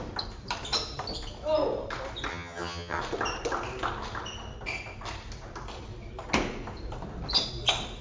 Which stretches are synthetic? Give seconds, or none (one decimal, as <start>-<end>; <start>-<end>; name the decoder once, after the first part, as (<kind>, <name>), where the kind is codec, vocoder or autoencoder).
2.3-3.0 (vocoder, HiFi-GAN)